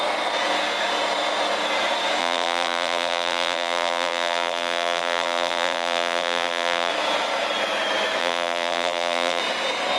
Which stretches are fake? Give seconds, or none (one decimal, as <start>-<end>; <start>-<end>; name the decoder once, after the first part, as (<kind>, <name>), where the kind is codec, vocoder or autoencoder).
2.2-6.9 (vocoder, BigVGAN v2); 8.2-9.4